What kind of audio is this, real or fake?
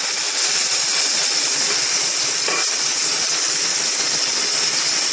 real